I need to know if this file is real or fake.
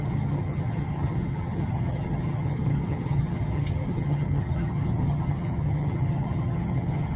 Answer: fake